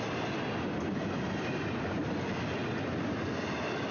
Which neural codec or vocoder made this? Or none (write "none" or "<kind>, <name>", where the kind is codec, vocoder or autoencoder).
none